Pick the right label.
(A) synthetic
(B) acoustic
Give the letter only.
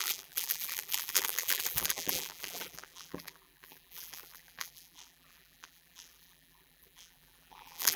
A